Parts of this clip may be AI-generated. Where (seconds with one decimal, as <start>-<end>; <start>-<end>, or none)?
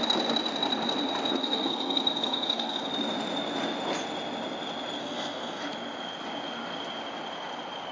1.4-2.9; 5.0-5.6